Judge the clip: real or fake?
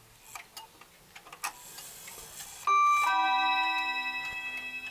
real